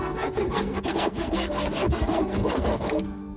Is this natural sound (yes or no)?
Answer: no